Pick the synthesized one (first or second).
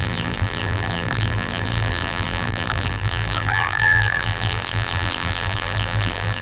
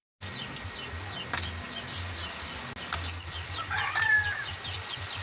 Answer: first